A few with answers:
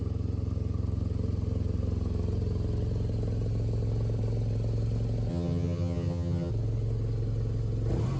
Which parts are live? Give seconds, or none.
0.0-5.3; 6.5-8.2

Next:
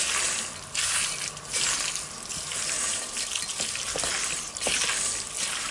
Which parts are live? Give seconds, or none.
0.0-3.5; 4.1-5.7

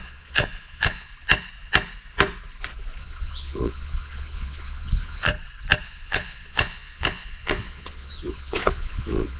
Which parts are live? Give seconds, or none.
1.1-3.0; 5.3-5.8

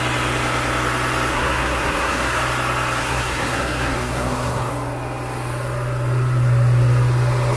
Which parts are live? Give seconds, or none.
0.0-1.3; 2.4-3.0; 4.7-7.6

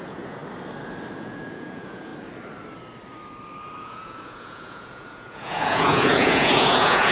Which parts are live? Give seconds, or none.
0.4-1.2; 2.1-3.8

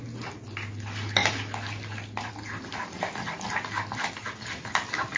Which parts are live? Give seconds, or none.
0.0-5.2

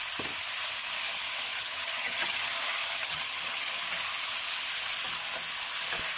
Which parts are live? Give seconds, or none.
0.0-1.5; 2.6-3.0; 3.8-6.2

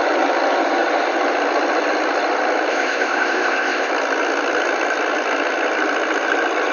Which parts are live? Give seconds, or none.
0.0-2.7; 3.9-6.7